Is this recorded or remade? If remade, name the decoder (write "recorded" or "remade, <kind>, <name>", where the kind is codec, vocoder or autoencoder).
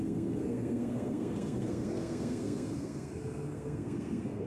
remade, codec, SNAC